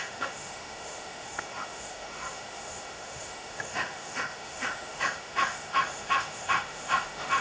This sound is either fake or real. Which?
fake